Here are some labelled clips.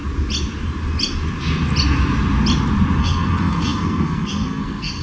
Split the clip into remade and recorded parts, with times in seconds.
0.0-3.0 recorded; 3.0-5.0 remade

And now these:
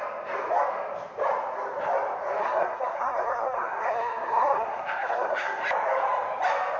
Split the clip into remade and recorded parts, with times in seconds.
0.0-2.4 recorded; 2.4-5.6 remade; 5.6-6.8 recorded

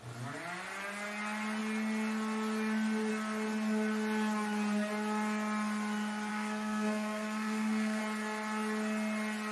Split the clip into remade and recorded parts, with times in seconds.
0.0-6.3 recorded; 6.3-8.0 remade; 8.0-9.5 recorded

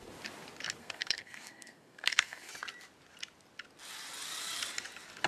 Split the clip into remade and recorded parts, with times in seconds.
0.0-0.8 recorded; 0.8-2.5 remade; 2.5-5.3 recorded

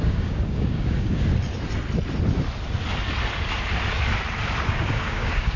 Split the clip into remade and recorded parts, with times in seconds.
0.0-1.3 remade; 1.3-4.7 recorded; 4.7-5.6 remade

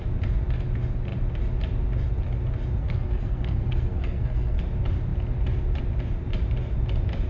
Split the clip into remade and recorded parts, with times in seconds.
0.0-2.8 recorded; 2.8-4.6 remade; 4.6-7.3 recorded

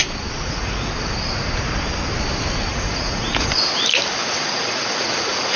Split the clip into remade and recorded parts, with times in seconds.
0.0-0.4 recorded; 0.4-0.9 remade; 0.9-2.7 recorded; 2.7-3.5 remade; 3.5-4.2 recorded; 4.2-5.6 remade